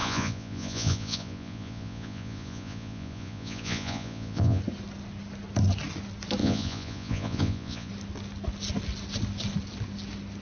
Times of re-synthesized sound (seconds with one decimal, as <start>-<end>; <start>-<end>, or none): 0.0-4.6; 6.4-7.9